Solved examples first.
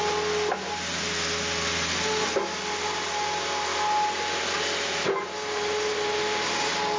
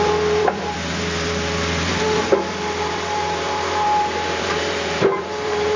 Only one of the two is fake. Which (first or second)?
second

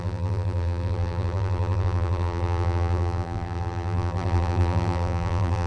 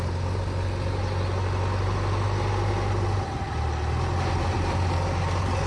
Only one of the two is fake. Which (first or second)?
first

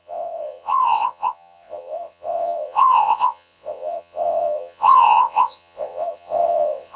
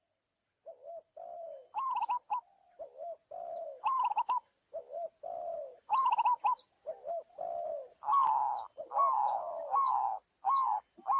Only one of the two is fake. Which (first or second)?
first